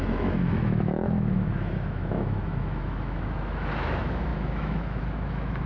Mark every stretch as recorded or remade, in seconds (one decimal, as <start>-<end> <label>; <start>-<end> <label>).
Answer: 0.0-5.7 remade